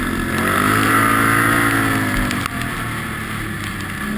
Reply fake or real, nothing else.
real